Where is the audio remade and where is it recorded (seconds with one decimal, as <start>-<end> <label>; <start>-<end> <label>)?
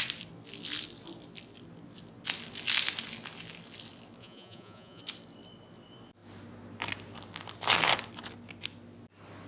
0.0-4.2 recorded; 4.2-5.0 remade; 5.0-9.5 recorded